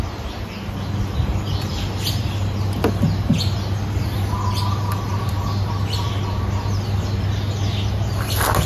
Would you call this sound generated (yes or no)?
no